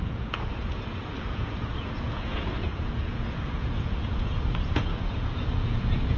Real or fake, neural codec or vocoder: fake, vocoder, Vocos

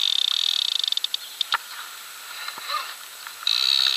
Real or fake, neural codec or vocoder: real